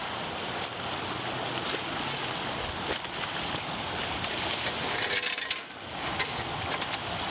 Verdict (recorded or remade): recorded